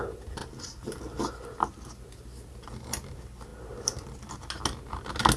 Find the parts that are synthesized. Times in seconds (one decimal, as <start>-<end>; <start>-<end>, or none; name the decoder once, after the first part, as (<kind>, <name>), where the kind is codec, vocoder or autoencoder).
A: none